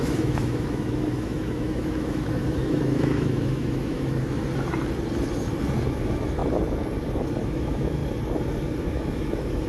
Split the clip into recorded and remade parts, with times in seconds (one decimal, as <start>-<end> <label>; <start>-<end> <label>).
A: 0.0-4.4 remade; 4.4-5.9 recorded; 5.9-6.4 remade; 6.4-7.4 recorded; 7.4-8.0 remade; 8.0-8.8 recorded; 8.8-9.7 remade